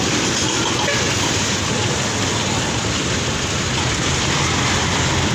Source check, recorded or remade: recorded